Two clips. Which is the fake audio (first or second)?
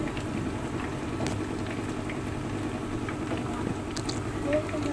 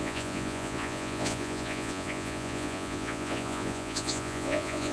second